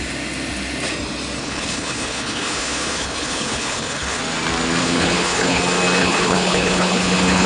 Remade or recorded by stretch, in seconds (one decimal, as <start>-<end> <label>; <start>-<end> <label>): 0.0-1.4 recorded; 1.4-4.2 remade; 4.2-4.8 recorded; 4.8-5.6 remade; 5.6-6.0 recorded; 6.0-7.5 remade